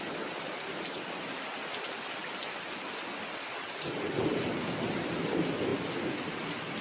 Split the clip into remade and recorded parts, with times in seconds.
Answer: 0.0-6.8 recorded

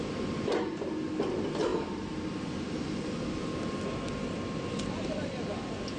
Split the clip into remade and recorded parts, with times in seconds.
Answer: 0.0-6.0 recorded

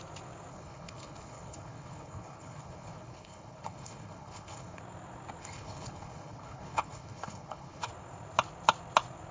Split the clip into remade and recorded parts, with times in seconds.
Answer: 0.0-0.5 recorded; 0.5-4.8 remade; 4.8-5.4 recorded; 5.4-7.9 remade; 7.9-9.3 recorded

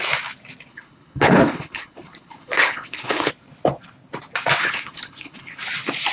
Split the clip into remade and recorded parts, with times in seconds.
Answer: 0.0-0.7 recorded; 0.7-3.3 remade; 3.3-4.6 recorded; 4.6-5.5 remade; 5.5-6.1 recorded

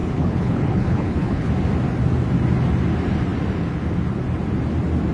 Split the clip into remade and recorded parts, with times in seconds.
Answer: 0.0-1.5 remade; 1.5-5.1 recorded

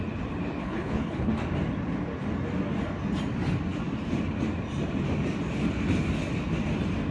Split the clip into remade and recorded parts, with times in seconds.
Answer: 0.0-0.6 recorded; 0.6-1.3 remade; 1.3-7.1 recorded